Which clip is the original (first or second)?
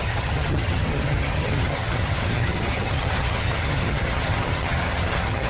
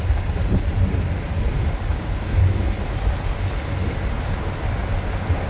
second